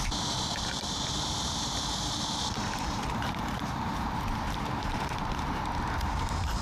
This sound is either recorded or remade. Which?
remade